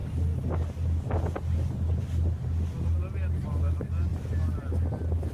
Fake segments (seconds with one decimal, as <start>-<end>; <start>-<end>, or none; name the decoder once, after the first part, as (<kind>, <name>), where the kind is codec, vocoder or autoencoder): none